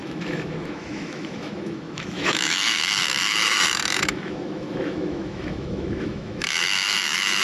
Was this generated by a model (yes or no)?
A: yes